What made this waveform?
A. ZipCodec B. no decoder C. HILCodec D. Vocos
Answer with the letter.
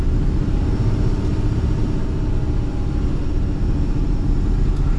B